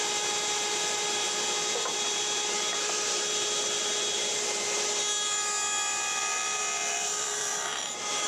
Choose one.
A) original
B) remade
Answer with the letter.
B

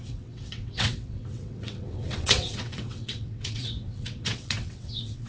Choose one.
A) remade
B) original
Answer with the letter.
A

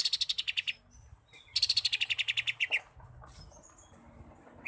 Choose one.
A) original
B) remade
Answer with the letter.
A